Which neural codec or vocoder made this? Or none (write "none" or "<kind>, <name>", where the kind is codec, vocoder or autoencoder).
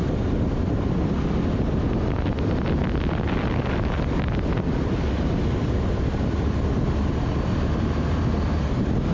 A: none